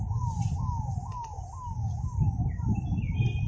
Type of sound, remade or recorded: recorded